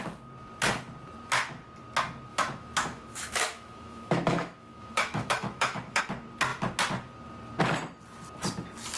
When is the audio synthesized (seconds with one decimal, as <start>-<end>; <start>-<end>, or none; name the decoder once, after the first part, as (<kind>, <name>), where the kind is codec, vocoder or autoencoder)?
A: 2.3-6.0 (autoencoder, DAC-VAE)